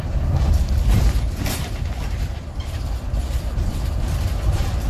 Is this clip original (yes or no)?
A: no